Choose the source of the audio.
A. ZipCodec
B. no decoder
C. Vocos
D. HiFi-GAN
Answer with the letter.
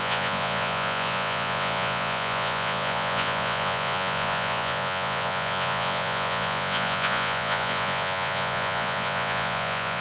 C